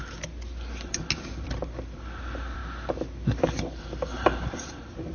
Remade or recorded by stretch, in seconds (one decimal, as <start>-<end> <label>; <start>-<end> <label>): 0.0-1.3 recorded; 1.3-2.6 remade; 2.6-3.8 recorded; 3.8-5.1 remade